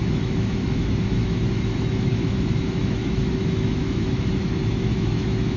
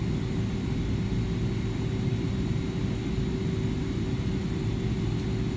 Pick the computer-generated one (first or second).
first